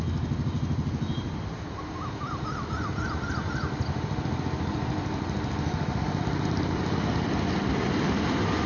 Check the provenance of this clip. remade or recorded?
recorded